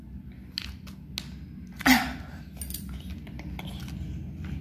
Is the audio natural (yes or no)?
yes